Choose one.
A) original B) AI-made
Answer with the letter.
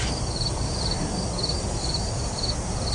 B